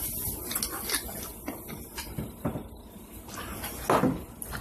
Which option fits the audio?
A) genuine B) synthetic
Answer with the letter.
A